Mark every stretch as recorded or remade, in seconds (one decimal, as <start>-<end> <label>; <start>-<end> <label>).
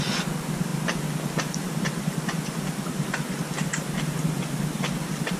0.0-5.4 recorded